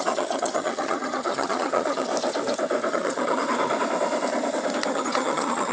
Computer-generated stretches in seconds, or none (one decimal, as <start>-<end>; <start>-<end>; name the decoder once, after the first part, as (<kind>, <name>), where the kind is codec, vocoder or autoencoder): 0.0-2.1 (vocoder, HiFi-GAN); 2.9-3.4; 4.9-5.7